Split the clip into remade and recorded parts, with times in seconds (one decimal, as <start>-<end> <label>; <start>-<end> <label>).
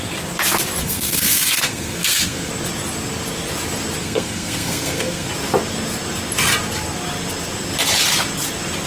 0.0-0.8 recorded; 0.8-2.5 remade; 2.5-4.0 recorded; 4.0-5.3 remade; 5.3-8.9 recorded